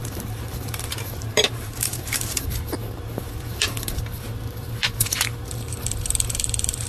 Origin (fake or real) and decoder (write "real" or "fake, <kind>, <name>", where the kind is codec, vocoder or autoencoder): fake, vocoder, BigVGAN v2